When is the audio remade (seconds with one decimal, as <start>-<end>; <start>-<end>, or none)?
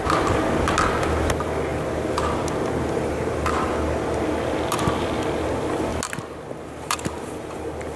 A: none